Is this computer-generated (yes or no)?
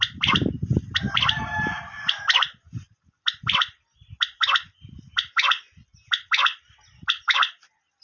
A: no